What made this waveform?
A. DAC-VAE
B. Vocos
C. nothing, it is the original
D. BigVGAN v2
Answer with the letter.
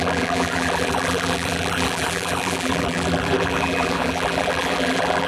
D